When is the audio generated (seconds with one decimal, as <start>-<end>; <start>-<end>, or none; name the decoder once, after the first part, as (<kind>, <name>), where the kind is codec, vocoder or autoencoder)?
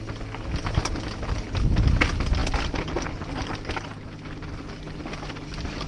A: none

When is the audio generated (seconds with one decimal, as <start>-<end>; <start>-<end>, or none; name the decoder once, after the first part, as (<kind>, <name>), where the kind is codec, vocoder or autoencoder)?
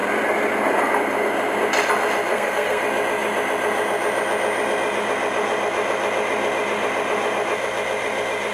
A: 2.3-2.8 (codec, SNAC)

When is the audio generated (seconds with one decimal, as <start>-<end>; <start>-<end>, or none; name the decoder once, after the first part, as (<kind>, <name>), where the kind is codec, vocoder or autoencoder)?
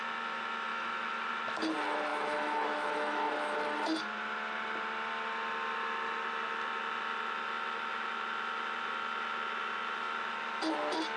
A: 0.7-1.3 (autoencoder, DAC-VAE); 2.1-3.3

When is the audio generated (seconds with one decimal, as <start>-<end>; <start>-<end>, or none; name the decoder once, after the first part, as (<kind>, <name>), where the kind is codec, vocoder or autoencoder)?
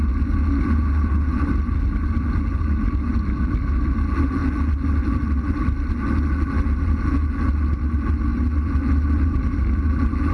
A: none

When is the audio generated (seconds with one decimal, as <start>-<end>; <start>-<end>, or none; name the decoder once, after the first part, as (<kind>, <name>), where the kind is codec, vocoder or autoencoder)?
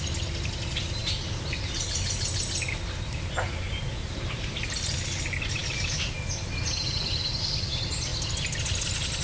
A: none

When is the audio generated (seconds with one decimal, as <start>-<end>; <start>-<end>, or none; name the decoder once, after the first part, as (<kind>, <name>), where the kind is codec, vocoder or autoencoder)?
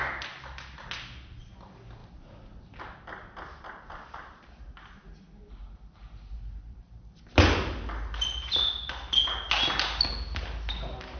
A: none